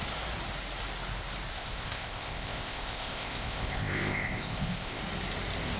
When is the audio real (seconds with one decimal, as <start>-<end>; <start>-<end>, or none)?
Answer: 0.0-1.5; 5.0-5.8